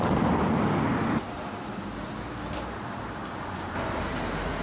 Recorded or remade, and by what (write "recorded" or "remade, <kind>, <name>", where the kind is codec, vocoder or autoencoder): recorded